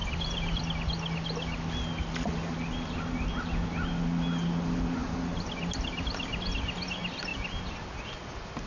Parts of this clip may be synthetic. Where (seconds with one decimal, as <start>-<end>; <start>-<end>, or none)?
0.0-0.6; 5.0-5.5